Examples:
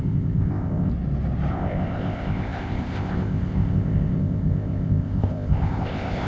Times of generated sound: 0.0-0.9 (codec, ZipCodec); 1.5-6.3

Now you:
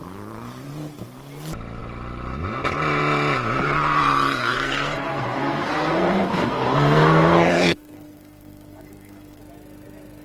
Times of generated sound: 4.4-9.4 (codec, SNAC)